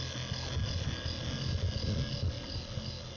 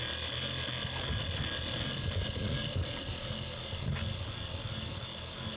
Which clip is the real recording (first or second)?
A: first